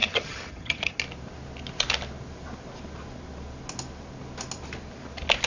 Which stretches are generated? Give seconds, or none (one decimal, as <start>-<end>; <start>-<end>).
0.0-1.0